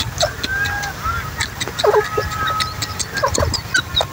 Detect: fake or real real